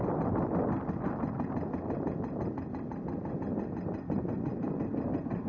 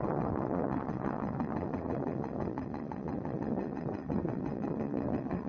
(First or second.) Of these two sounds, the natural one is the first